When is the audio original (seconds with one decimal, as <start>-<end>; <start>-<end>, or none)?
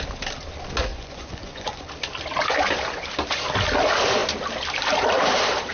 0.0-0.9; 1.9-5.7